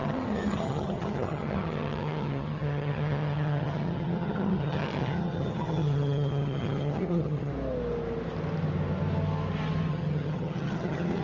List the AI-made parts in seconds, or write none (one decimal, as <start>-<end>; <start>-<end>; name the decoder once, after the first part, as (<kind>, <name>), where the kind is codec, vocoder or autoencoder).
0.0-7.5 (vocoder, HiFi-GAN); 9.9-11.2